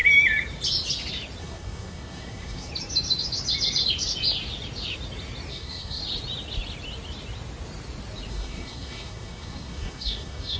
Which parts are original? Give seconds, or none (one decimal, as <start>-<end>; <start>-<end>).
0.0-1.4; 2.7-5.5; 6.0-8.3